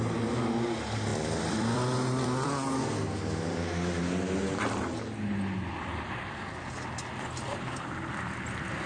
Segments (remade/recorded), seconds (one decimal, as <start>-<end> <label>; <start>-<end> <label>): 0.0-1.1 recorded; 1.1-2.5 remade; 2.5-7.5 recorded; 7.5-8.1 remade; 8.1-8.9 recorded